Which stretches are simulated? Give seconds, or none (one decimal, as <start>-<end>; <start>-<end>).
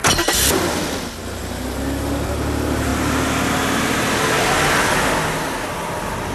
none